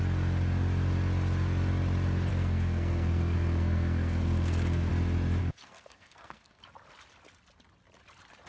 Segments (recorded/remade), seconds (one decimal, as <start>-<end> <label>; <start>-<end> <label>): 0.0-2.3 recorded; 2.3-4.9 remade; 4.9-5.4 recorded; 5.4-6.6 remade; 6.6-8.5 recorded